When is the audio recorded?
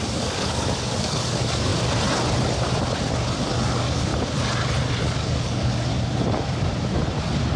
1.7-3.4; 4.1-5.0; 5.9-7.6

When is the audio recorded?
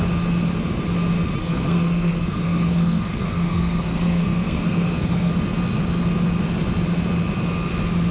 0.0-1.4; 5.3-8.1